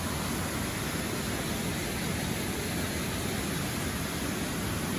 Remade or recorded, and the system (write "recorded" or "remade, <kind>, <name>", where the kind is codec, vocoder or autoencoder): recorded